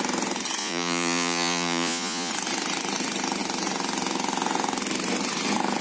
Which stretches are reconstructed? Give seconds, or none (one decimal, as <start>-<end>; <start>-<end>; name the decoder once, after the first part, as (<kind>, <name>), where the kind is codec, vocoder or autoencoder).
0.6-2.3 (vocoder, Vocos)